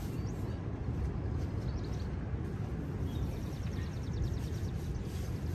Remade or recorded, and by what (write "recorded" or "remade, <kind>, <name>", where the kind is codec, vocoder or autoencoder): recorded